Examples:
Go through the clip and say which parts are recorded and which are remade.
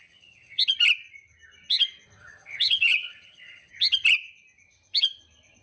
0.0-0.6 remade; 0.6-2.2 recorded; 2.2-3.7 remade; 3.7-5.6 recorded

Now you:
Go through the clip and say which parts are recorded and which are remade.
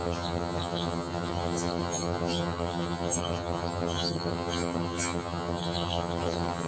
0.0-6.7 remade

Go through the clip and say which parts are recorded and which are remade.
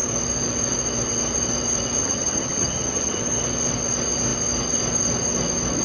0.0-2.0 recorded; 2.0-3.2 remade; 3.2-5.8 recorded